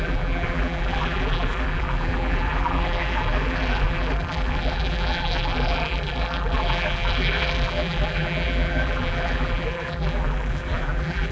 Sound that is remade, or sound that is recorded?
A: remade